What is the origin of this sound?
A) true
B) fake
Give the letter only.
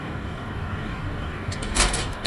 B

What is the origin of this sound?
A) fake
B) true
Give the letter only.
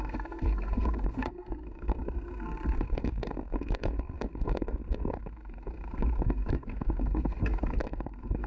A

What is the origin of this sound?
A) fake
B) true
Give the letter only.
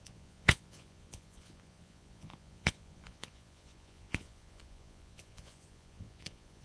A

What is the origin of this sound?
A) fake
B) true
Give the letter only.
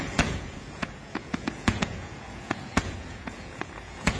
A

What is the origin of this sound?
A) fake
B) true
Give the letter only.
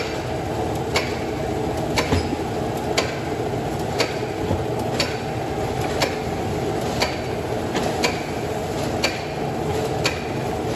B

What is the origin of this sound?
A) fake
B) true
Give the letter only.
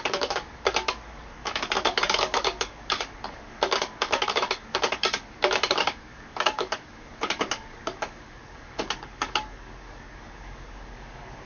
A